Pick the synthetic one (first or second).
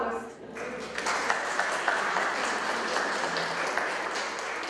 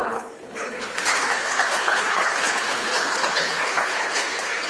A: second